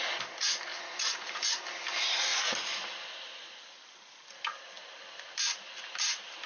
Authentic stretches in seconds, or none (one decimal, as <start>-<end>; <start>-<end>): 0.0-0.7; 1.6-6.5